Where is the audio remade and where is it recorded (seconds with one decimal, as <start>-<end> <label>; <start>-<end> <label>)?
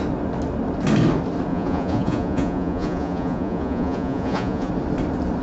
0.0-1.5 recorded; 1.5-4.7 remade; 4.7-5.4 recorded